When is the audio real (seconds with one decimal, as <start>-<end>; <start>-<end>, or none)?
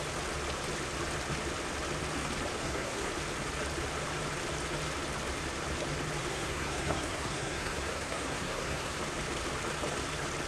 0.0-2.6; 3.1-6.3; 9.0-10.5